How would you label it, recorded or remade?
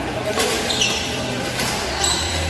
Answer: remade